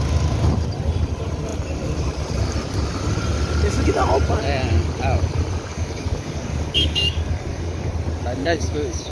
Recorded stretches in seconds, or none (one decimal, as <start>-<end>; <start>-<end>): 0.0-5.7; 7.9-8.4